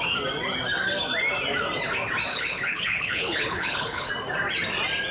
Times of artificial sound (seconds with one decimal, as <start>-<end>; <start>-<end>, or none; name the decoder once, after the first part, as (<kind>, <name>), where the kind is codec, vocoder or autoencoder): 2.3-4.1 (codec, HILCodec)